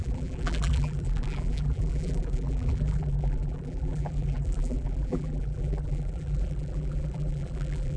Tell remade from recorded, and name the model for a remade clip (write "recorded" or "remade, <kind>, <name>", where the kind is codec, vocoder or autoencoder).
remade, vocoder, BigVGAN v2